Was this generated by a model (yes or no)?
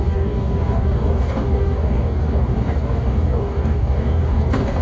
yes